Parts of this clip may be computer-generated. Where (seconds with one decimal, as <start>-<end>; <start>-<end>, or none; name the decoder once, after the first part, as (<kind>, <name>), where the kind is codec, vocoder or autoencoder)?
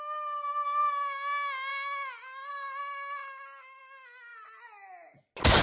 none